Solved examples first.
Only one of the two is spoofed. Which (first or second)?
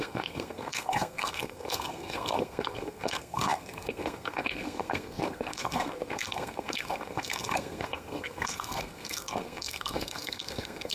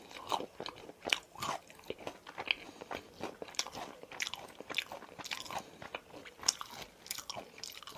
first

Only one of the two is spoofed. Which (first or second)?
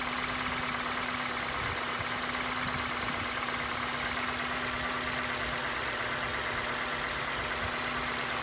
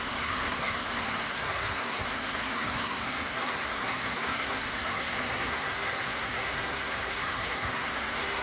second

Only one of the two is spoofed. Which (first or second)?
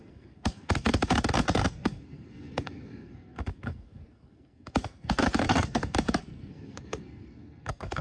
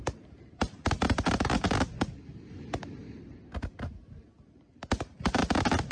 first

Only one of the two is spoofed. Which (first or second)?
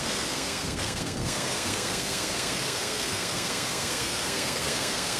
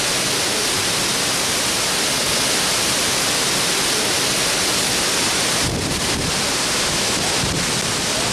first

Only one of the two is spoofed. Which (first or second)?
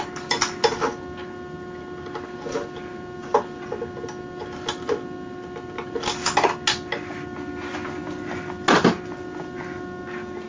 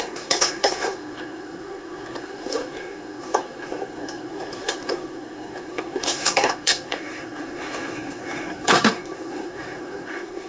second